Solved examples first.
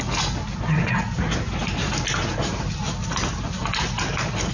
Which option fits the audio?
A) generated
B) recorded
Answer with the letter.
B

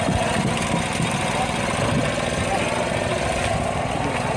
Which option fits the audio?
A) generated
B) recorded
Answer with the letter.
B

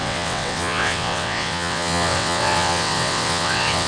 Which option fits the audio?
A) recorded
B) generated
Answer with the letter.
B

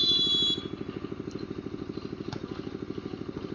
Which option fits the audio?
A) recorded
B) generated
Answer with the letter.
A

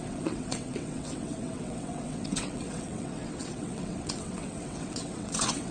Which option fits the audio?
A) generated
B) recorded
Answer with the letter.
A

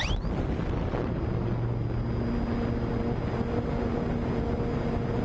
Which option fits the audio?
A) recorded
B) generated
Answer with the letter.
A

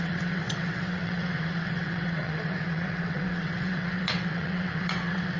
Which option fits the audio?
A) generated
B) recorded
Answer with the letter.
A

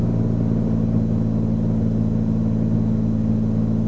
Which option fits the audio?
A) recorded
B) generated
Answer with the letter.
A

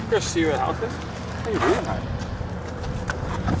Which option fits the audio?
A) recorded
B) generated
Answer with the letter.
A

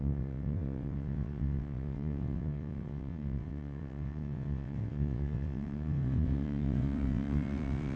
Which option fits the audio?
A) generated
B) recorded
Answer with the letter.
A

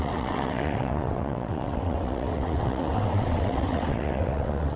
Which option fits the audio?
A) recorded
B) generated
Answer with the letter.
B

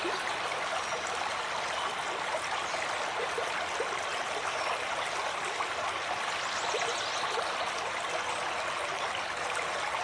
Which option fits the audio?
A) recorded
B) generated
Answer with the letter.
A